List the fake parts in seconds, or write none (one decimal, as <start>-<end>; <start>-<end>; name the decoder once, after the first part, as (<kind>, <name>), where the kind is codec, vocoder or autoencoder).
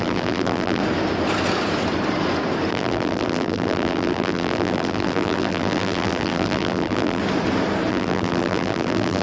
0.0-0.8 (vocoder, BigVGAN v2); 2.7-7.2; 7.9-9.2